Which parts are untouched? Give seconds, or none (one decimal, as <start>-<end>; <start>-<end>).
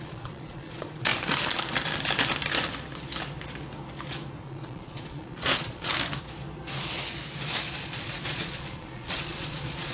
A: 1.1-4.4; 5.9-7.8